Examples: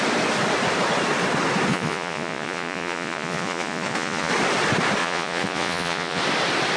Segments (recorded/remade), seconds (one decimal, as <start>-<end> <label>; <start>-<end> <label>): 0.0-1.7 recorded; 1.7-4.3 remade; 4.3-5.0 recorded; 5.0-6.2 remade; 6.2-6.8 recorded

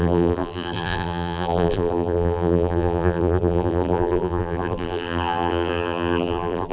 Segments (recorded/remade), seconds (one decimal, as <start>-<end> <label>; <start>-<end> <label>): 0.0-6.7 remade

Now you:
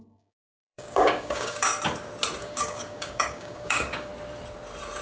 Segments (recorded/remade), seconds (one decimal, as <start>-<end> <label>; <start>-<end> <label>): 0.0-1.7 remade; 1.7-2.4 recorded; 2.4-4.1 remade; 4.1-5.0 recorded